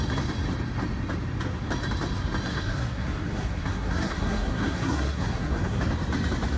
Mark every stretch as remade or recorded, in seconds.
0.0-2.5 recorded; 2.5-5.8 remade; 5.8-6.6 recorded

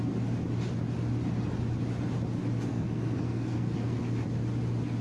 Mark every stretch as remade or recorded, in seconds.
0.0-2.7 recorded; 2.7-4.0 remade; 4.0-5.0 recorded

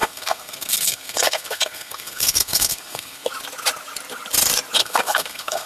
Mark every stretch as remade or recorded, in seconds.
0.0-3.3 remade; 3.3-4.8 recorded; 4.8-5.7 remade